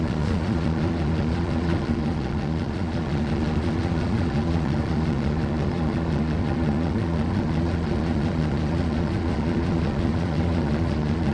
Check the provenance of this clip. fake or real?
fake